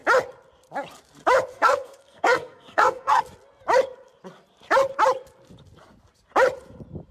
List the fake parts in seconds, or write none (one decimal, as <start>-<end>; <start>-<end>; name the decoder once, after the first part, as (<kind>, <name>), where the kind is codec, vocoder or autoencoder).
1.5-3.2 (codec, SNAC)